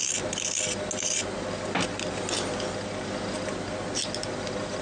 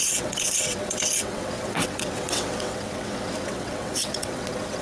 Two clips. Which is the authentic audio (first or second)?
first